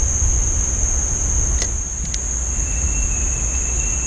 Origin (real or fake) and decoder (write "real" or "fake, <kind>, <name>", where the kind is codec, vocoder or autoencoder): real